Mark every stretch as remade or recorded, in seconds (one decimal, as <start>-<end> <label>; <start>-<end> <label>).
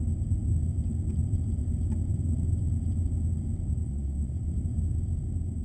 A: 0.0-3.8 recorded; 3.8-4.5 remade; 4.5-5.6 recorded